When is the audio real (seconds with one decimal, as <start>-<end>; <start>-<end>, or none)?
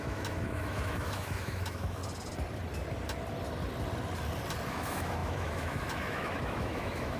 2.0-4.7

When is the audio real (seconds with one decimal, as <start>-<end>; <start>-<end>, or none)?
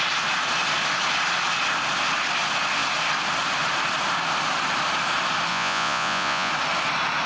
0.0-5.5; 6.5-7.3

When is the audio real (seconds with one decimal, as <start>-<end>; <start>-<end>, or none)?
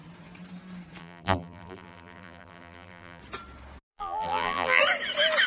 0.0-1.0; 3.2-3.9; 4.8-5.5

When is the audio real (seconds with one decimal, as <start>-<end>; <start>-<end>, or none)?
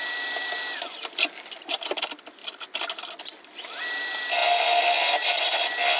0.0-6.0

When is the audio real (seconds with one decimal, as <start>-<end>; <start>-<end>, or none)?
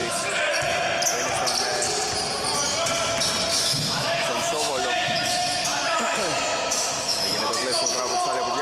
0.0-3.5; 8.0-8.6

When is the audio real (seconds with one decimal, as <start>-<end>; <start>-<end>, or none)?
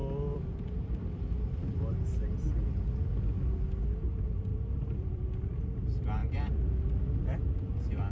1.6-4.5; 5.6-6.2; 6.9-8.1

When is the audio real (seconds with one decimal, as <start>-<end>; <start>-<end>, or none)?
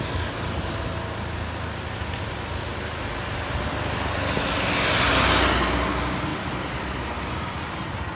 0.0-8.1